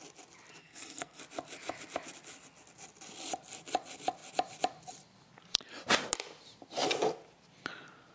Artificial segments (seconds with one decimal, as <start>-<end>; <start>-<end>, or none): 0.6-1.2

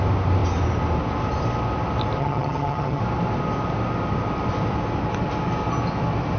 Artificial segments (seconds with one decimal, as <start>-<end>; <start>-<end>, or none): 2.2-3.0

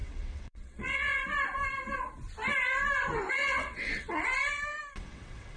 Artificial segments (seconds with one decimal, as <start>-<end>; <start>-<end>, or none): 0.0-1.2; 3.3-4.3; 4.9-5.6

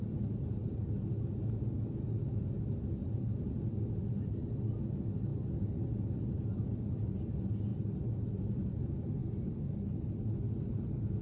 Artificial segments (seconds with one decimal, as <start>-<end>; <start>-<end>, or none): 5.3-6.0; 7.7-8.4; 9.2-10.0

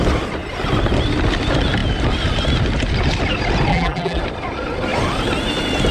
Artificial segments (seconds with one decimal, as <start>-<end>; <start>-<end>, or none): 3.7-4.2

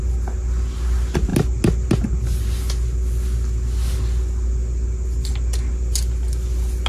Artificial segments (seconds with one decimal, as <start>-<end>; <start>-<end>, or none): none